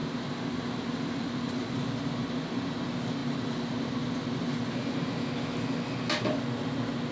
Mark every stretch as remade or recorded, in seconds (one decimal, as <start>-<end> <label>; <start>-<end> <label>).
0.0-7.1 recorded